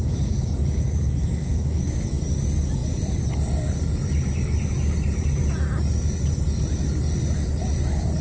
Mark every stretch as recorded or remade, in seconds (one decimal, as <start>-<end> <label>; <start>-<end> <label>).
0.0-1.5 recorded; 1.5-2.2 remade; 2.2-8.2 recorded